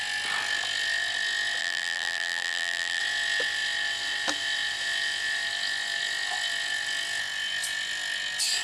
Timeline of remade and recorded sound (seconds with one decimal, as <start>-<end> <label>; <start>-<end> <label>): 0.0-1.6 recorded; 1.6-3.0 remade; 3.0-8.6 recorded